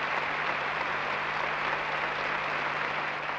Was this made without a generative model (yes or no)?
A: yes